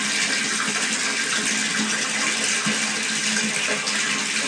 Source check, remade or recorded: recorded